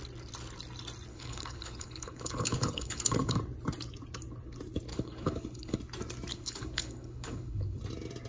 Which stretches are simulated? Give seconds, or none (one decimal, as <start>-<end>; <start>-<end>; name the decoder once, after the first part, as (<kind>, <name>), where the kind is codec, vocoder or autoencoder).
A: 1.1-3.4 (codec, HILCodec); 4.9-5.8; 6.3-7.8